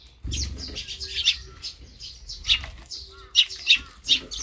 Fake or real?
real